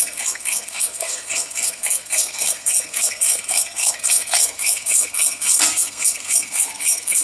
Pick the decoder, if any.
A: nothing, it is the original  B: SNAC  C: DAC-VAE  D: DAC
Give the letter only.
B